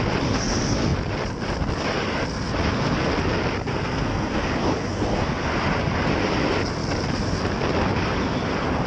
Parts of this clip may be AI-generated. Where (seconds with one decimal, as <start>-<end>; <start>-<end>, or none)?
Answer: 3.7-4.5; 4.9-5.5